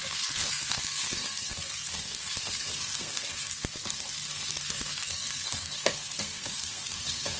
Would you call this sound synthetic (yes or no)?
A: yes